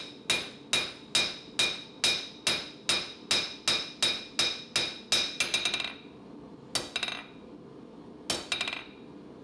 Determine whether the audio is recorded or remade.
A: recorded